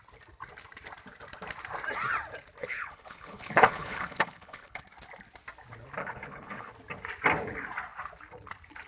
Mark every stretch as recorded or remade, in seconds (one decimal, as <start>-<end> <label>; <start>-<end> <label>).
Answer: 0.0-2.6 recorded; 2.6-4.8 remade; 4.8-6.0 recorded; 6.0-6.7 remade; 6.7-8.9 recorded

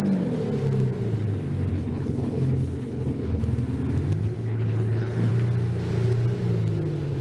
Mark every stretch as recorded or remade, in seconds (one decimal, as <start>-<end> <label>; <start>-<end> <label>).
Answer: 0.0-1.7 recorded; 1.7-3.4 remade; 3.4-4.2 recorded; 4.2-5.3 remade; 5.3-7.2 recorded